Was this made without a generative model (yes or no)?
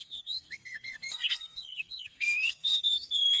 no